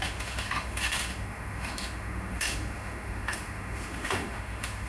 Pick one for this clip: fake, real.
fake